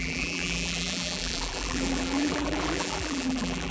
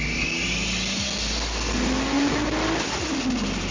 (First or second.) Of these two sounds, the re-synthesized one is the first